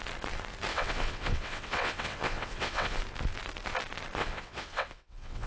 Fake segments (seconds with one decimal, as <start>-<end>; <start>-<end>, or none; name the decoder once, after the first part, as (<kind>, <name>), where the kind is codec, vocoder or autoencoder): 0.7-3.0 (vocoder, WaveNeXt); 4.2-5.5